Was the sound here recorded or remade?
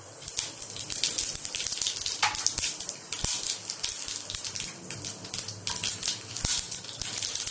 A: recorded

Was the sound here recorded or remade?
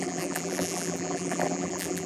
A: remade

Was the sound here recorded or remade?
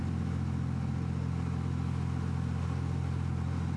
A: recorded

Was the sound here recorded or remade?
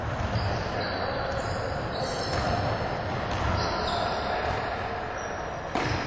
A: recorded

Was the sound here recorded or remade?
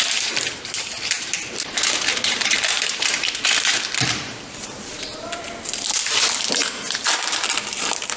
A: remade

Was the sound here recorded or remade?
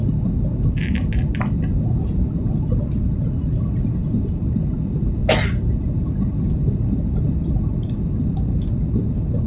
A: recorded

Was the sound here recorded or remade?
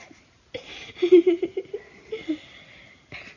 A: recorded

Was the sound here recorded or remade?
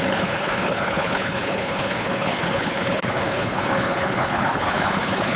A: remade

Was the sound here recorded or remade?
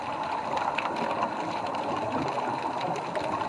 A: recorded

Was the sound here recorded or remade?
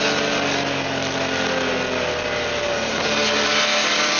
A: recorded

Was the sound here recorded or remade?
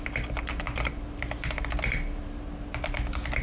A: recorded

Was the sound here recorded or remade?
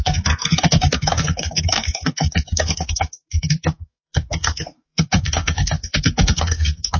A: remade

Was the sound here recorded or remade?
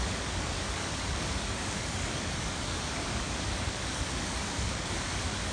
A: remade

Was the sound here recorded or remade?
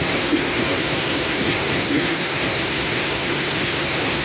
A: remade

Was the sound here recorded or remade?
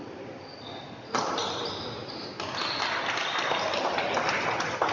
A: recorded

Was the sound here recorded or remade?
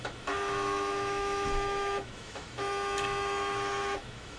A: remade